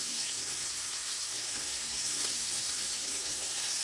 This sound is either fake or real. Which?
fake